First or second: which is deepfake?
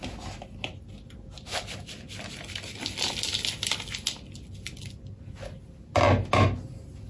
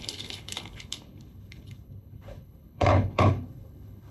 second